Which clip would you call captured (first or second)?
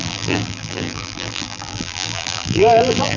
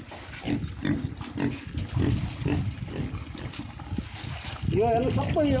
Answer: second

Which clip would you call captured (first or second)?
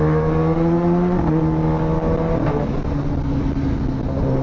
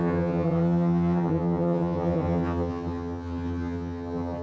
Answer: first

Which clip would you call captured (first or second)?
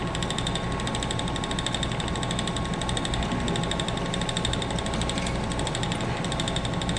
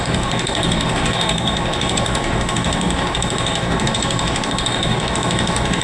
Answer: first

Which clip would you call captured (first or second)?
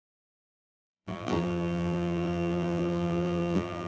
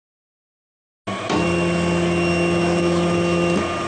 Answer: second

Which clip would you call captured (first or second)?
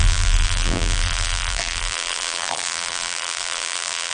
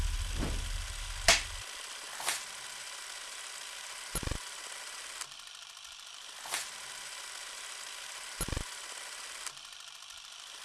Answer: second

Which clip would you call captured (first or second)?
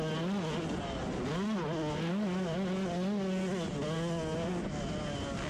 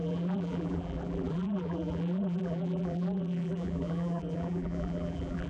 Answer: first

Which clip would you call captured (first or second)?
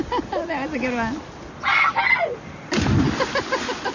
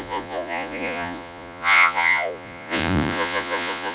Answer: first